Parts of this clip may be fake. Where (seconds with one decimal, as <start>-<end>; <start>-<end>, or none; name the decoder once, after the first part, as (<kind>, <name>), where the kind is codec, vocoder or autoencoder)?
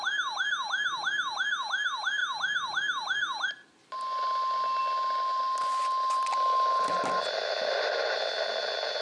none